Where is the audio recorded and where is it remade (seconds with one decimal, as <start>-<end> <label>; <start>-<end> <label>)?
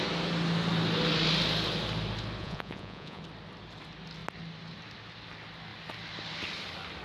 0.0-2.4 recorded; 2.4-3.2 remade; 3.2-7.0 recorded